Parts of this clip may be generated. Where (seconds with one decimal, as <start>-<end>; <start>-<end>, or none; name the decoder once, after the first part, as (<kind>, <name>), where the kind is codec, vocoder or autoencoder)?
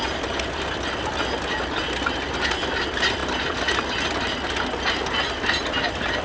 none